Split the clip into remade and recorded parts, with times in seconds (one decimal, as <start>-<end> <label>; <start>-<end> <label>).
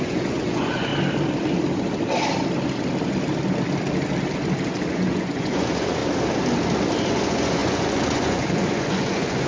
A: 0.0-0.9 remade; 0.9-4.9 recorded; 4.9-6.0 remade; 6.0-7.1 recorded; 7.1-9.5 remade